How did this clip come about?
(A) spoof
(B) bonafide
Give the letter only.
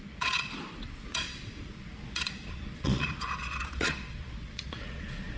A